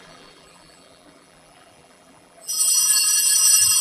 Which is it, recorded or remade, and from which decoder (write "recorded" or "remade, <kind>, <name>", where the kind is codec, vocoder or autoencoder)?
remade, vocoder, BigVGAN v2